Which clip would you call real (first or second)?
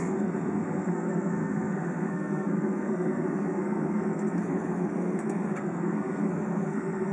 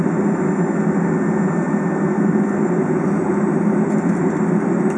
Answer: second